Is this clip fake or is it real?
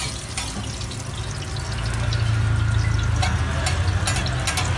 real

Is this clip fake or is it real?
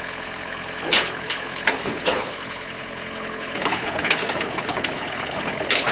fake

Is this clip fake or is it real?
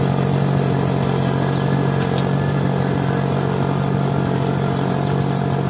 real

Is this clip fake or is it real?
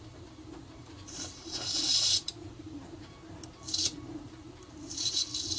fake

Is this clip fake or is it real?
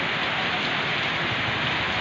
real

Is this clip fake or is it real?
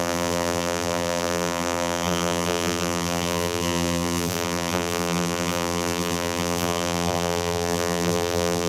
fake